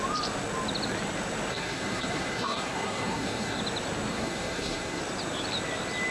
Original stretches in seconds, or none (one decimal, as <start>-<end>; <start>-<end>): 0.0-1.5; 3.6-4.1; 5.0-6.1

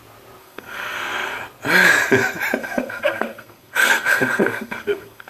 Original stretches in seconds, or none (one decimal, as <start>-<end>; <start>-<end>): 0.0-0.4; 1.4-2.6